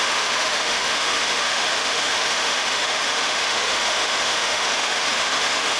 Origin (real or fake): fake